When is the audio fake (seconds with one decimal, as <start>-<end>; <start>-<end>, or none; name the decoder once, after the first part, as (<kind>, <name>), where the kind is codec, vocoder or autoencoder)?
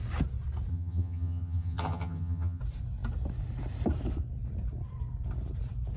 0.7-2.6 (vocoder, HiFi-GAN)